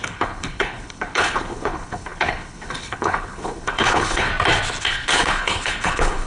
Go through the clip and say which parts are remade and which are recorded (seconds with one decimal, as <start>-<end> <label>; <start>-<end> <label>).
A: 0.0-4.3 remade; 4.3-4.8 recorded; 4.8-6.3 remade